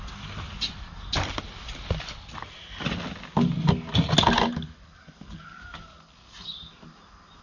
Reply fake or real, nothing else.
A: real